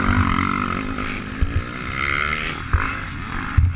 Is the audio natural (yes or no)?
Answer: yes